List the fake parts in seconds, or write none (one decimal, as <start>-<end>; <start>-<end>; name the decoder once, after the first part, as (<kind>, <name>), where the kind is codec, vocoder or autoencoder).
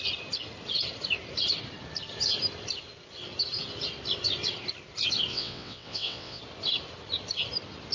5.3-6.4 (vocoder, WaveNeXt)